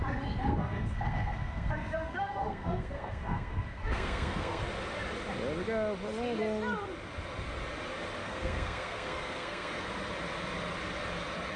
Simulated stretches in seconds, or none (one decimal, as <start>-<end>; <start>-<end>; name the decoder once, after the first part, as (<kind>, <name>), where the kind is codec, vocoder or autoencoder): 0.4-4.6 (codec, SNAC); 8.2-9.8